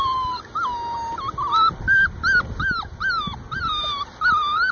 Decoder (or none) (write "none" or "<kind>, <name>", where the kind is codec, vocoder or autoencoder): none